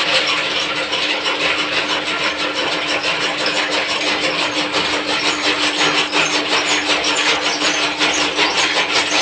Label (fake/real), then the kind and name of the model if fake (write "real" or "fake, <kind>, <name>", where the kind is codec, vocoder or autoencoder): real